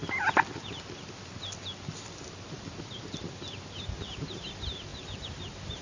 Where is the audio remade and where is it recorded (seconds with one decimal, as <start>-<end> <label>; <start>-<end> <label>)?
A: 0.0-5.8 recorded